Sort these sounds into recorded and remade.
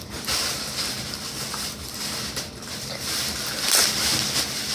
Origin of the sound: recorded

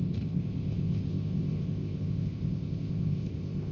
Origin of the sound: remade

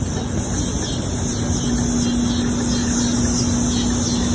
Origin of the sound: recorded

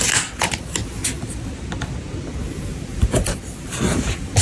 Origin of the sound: recorded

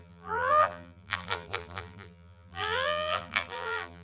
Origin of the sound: remade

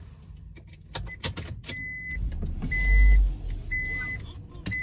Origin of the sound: recorded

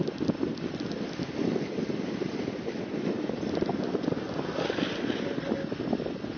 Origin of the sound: recorded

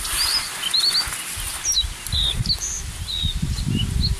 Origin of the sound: recorded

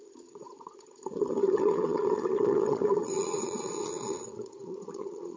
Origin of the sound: remade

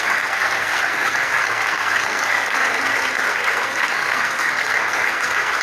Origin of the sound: remade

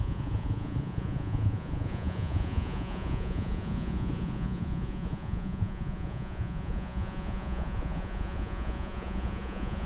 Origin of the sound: remade